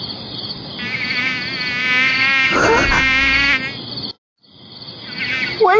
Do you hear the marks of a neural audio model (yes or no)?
no